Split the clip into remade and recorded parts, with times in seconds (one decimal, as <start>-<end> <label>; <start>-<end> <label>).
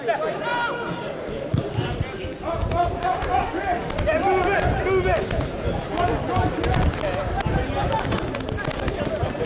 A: 0.0-9.5 recorded